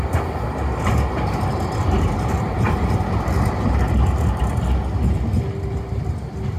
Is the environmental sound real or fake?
real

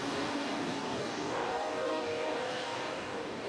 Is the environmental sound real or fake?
fake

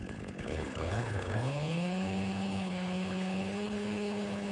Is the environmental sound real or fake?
fake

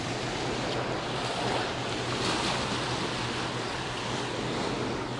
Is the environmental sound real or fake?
real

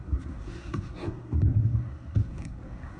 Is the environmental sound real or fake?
fake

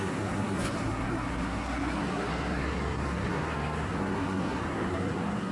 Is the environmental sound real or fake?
fake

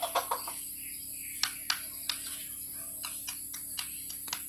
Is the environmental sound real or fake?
real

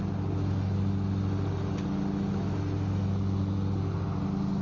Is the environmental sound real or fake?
real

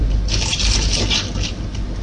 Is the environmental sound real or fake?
real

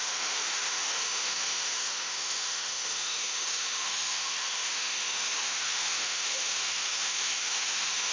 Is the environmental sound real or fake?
fake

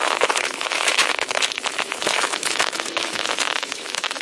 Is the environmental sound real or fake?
fake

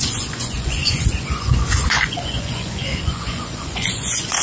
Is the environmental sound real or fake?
fake